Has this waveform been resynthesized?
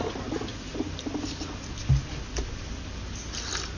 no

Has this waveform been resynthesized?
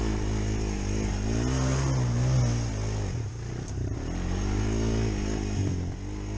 no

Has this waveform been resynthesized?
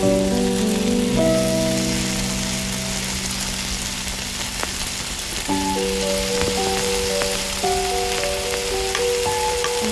no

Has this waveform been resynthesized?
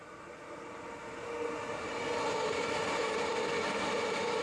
no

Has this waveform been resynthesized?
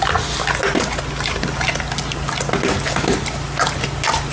no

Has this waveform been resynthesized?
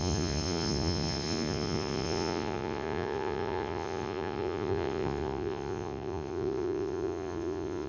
yes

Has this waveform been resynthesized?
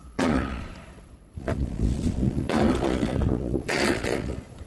yes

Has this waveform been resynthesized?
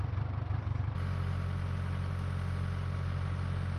no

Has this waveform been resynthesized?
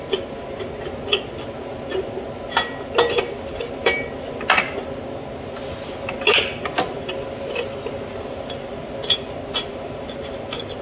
no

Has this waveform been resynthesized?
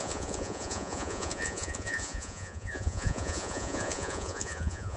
yes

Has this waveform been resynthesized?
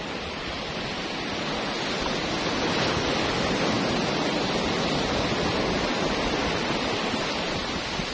no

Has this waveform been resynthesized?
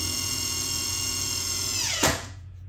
yes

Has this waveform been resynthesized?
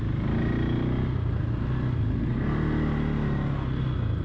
no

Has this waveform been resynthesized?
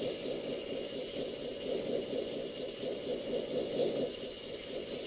yes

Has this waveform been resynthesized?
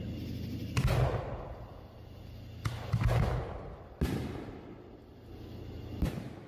no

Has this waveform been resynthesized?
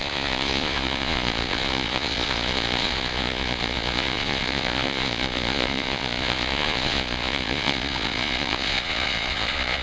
yes